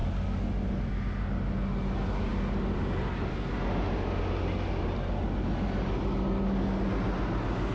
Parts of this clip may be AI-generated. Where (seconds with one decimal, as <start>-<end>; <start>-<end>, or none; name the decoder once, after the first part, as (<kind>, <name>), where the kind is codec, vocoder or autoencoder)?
none